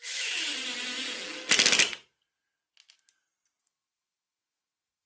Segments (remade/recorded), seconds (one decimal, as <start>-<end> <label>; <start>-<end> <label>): 0.0-0.5 remade; 0.5-3.6 recorded; 3.6-5.1 remade